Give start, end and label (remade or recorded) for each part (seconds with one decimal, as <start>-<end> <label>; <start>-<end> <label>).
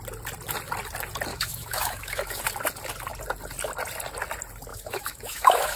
0.0-1.3 recorded; 1.3-2.4 remade; 2.4-4.7 recorded; 4.7-5.8 remade